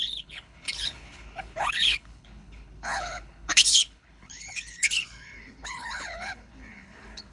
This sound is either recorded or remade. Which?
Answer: remade